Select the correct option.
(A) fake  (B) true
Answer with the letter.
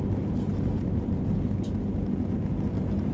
B